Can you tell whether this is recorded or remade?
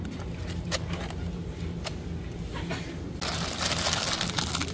recorded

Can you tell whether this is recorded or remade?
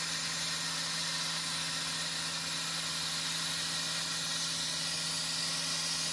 recorded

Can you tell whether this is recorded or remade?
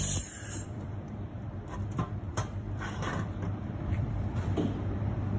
remade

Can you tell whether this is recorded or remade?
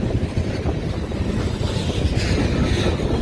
recorded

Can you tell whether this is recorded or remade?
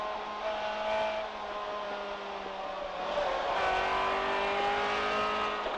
recorded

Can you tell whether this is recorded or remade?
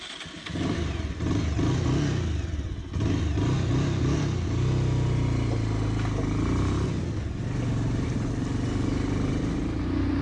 recorded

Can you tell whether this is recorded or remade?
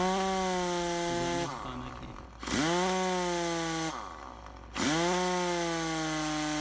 recorded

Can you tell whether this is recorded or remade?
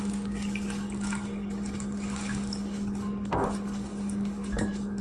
remade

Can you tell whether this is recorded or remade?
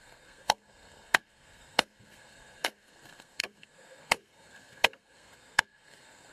remade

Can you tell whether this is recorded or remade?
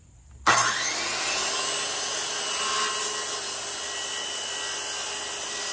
recorded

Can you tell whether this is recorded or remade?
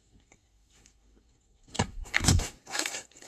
remade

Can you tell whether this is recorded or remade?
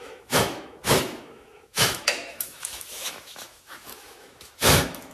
remade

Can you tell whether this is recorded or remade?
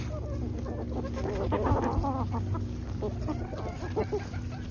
recorded